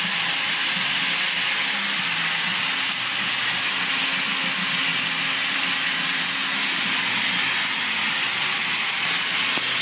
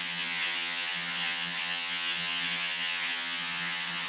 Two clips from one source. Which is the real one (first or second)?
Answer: first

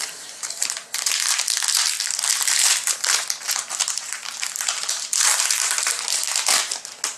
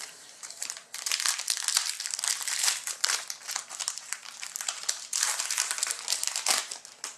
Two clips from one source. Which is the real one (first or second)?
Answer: first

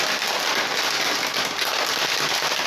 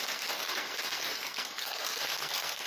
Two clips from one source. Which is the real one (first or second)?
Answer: first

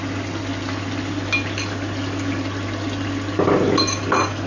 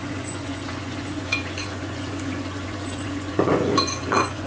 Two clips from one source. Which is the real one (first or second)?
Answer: first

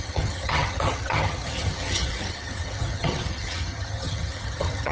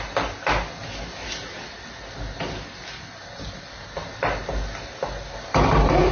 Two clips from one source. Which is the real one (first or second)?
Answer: second